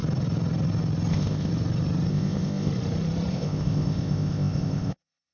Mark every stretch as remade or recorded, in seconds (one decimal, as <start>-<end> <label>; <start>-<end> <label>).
0.0-1.1 recorded; 1.1-1.5 remade; 1.5-2.1 recorded; 2.1-2.7 remade; 2.7-3.3 recorded; 3.3-5.3 remade